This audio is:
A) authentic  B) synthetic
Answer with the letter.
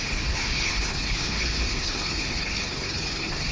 B